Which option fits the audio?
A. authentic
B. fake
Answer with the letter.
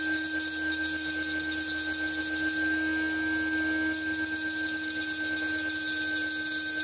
A